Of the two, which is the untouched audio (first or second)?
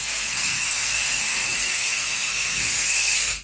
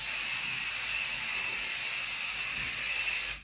second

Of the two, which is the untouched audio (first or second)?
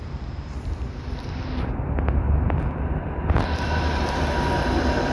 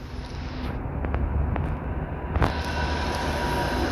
second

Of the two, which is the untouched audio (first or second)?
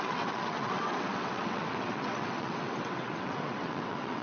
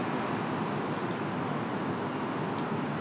second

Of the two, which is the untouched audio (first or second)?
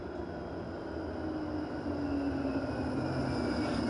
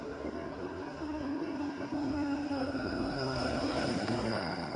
first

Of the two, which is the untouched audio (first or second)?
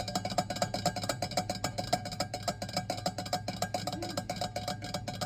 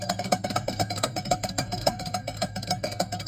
first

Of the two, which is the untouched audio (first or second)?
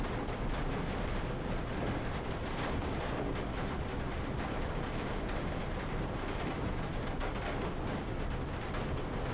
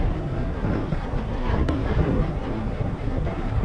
first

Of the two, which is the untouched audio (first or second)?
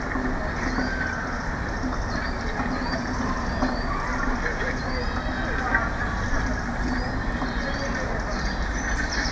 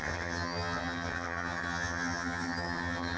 first